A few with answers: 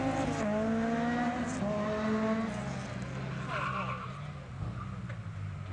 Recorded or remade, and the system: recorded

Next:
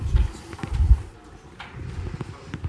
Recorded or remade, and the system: recorded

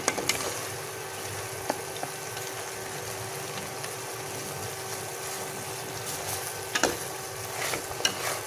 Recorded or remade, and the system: recorded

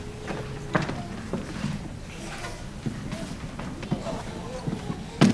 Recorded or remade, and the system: recorded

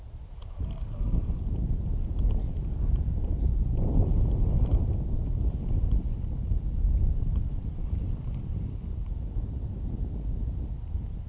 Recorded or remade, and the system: recorded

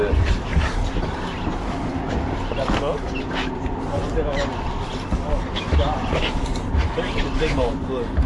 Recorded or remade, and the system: recorded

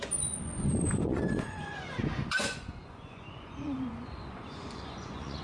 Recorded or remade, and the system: remade, vocoder, Vocos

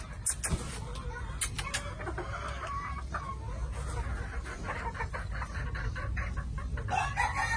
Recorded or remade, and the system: recorded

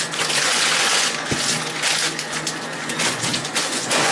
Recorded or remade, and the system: remade, vocoder, Vocos